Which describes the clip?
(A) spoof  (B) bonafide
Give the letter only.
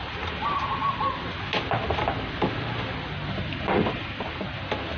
B